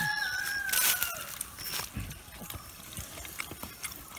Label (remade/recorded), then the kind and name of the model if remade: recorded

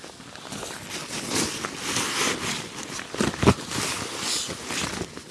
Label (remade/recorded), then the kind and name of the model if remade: recorded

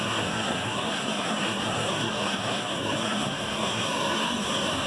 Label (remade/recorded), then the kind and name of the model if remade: remade, codec, SNAC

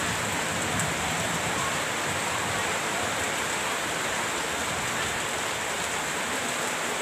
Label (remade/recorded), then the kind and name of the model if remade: remade, vocoder, BigVGAN v2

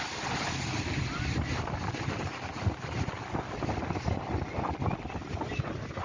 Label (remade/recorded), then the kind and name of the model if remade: recorded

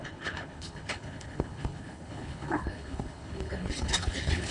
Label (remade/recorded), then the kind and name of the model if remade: remade, codec, HILCodec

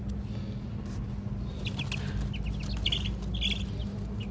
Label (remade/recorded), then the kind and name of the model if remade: recorded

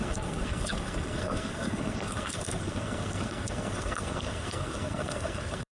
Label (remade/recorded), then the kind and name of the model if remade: remade, codec, SNAC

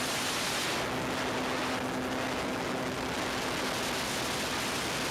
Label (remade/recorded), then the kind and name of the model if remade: recorded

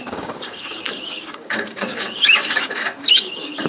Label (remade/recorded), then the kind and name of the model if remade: remade, codec, DAC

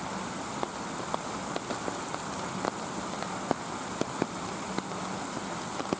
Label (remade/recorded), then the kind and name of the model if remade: recorded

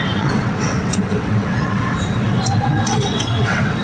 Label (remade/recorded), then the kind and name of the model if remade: remade, vocoder, WaveNeXt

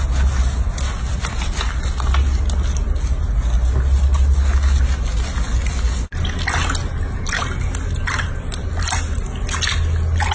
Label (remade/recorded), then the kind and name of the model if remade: recorded